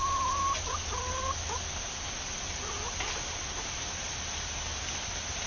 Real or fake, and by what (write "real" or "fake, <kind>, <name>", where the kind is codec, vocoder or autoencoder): real